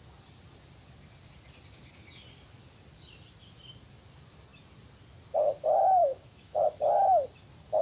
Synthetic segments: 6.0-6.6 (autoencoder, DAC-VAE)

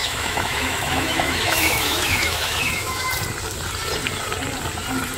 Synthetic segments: 0.0-3.1 (autoencoder, DAC-VAE)

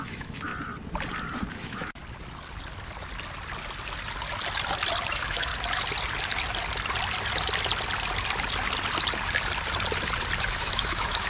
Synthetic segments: 0.0-0.5 (autoencoder, DAC-VAE); 1.5-2.0; 5.1-5.5; 10.4-11.3

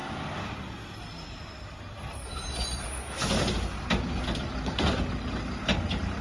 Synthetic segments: none

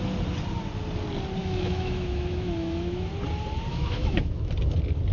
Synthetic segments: 1.4-3.1 (autoencoder, DAC-VAE); 3.7-4.5

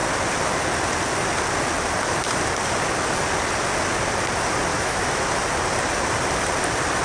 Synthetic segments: 4.7-5.4 (autoencoder, DAC-VAE)

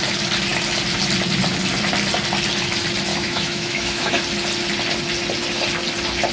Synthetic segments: 3.1-4.2 (autoencoder, DAC-VAE)